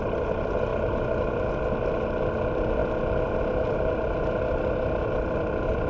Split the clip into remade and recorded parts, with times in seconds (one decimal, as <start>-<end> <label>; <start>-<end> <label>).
0.0-5.9 recorded

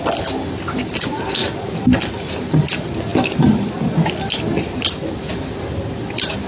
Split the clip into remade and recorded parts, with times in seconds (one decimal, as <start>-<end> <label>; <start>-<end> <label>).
0.0-6.5 recorded

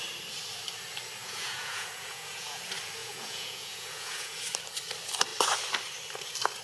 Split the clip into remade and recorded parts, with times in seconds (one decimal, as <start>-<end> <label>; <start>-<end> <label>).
0.0-1.2 recorded; 1.2-2.6 remade; 2.6-3.0 recorded; 3.0-4.4 remade; 4.4-6.6 recorded

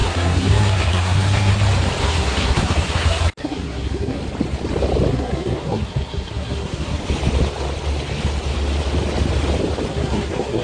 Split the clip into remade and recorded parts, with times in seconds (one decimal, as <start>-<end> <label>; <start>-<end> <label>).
0.0-1.5 remade; 1.5-2.0 recorded; 2.0-4.2 remade; 4.2-5.1 recorded; 5.1-7.0 remade; 7.0-9.9 recorded; 9.9-10.6 remade

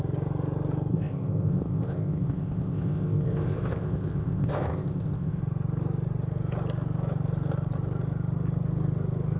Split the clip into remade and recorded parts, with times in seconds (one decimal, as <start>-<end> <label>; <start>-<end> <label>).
0.0-0.9 recorded; 0.9-5.4 remade; 5.4-9.4 recorded